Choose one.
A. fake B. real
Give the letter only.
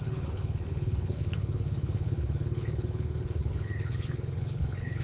A